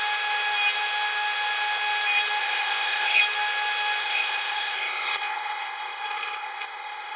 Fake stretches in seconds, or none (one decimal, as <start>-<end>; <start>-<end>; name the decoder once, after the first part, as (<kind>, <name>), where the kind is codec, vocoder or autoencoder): 2.4-3.2 (codec, ZipCodec); 4.0-7.2